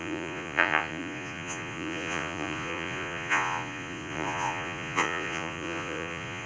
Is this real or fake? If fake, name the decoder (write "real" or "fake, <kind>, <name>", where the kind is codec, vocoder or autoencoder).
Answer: fake, vocoder, Vocos